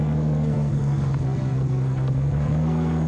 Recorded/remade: remade